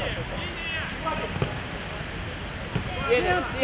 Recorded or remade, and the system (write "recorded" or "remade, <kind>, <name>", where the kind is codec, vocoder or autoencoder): recorded